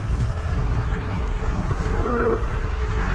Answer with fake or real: fake